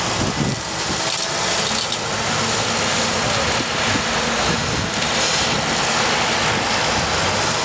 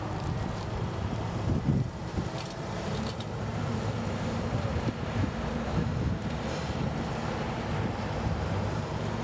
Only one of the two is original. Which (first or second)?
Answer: first